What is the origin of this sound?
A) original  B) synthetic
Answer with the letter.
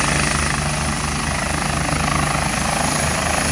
A